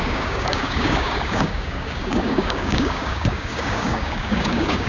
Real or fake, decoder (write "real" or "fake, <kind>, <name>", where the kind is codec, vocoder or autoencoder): fake, codec, DAC